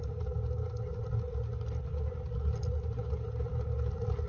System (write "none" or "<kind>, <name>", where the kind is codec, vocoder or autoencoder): none